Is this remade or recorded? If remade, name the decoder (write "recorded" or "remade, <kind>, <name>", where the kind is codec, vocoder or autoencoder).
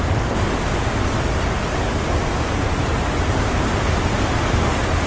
recorded